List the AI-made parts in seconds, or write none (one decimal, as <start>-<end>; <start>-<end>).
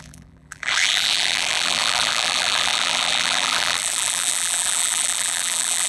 0.0-5.9